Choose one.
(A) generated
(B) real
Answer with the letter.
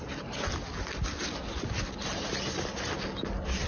B